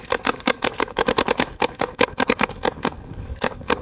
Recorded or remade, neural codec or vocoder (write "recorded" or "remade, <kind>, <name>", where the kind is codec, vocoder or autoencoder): remade, codec, SNAC